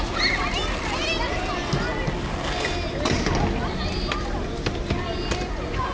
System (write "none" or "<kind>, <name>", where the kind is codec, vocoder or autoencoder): none